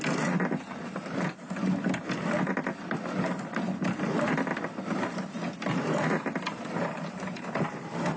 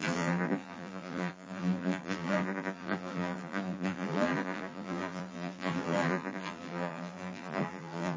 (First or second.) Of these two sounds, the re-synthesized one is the second